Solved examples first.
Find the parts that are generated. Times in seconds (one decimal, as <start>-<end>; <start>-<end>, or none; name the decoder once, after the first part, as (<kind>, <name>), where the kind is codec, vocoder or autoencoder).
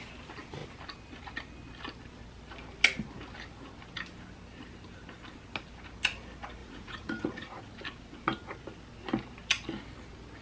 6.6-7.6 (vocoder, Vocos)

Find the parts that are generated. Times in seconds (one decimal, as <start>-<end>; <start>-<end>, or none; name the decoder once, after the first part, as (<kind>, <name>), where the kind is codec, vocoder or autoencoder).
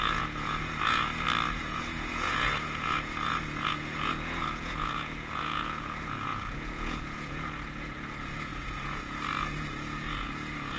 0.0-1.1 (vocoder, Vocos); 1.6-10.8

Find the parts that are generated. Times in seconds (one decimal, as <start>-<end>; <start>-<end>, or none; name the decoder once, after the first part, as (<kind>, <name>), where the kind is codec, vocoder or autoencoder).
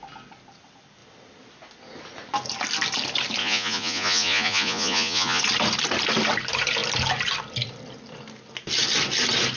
3.4-5.4 (vocoder, Vocos)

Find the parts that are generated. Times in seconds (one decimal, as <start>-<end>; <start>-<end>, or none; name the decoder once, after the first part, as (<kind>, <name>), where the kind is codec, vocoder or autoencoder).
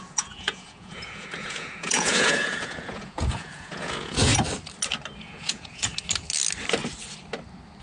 0.0-4.3 (vocoder, Vocos); 5.2-5.9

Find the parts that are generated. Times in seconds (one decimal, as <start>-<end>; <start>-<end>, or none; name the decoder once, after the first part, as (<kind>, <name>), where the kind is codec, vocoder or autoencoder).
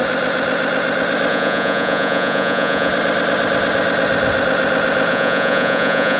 1.3-2.9 (vocoder, Vocos); 5.1-6.2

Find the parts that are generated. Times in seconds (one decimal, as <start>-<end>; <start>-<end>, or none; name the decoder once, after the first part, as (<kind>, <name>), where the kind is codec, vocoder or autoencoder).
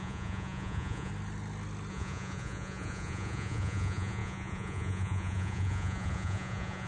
0.0-1.1 (vocoder, Vocos); 1.9-6.9